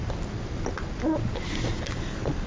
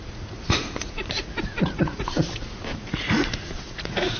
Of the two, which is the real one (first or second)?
first